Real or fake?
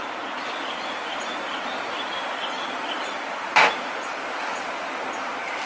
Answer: real